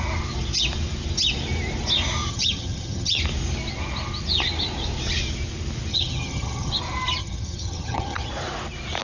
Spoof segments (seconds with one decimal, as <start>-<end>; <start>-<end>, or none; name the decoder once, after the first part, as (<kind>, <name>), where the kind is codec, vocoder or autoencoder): 2.3-3.2 (vocoder, HiFi-GAN); 5.9-6.7; 7.2-8.3